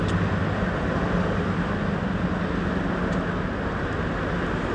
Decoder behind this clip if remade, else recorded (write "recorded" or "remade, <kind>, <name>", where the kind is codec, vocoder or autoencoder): recorded